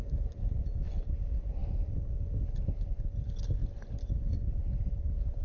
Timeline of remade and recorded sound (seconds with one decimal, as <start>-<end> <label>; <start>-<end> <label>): 0.0-5.4 recorded

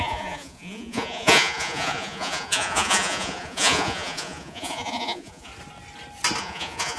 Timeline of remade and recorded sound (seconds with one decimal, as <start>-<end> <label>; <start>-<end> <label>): 0.0-5.5 remade; 5.5-6.4 recorded; 6.4-7.0 remade